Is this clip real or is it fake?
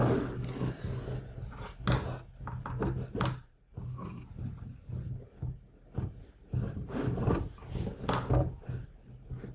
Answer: real